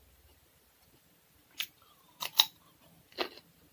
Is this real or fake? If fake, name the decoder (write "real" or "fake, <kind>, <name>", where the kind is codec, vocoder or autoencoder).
real